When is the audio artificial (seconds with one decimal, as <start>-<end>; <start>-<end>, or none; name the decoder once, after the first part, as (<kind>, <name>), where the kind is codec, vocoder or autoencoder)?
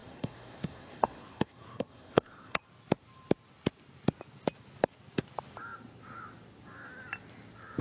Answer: 0.0-2.6 (codec, SNAC)